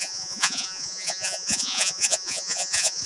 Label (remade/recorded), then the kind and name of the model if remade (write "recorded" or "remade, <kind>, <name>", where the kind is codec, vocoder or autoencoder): remade, vocoder, Vocos